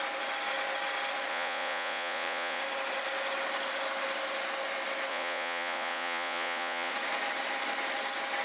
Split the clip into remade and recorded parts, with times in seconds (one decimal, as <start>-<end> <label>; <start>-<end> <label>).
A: 0.0-1.3 recorded; 1.3-2.6 remade; 2.6-5.1 recorded; 5.1-6.9 remade; 6.9-8.4 recorded